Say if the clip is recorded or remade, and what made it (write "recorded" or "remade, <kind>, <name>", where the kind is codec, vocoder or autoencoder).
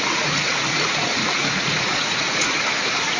remade, vocoder, Vocos